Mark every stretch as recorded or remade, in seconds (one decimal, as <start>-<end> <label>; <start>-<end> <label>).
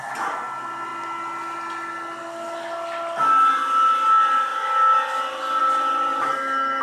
0.0-6.8 recorded